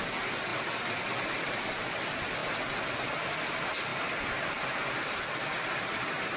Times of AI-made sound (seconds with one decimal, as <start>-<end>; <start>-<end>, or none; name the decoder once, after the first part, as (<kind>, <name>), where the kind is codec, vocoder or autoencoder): none